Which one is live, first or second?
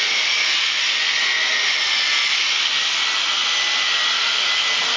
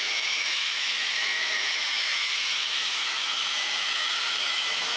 first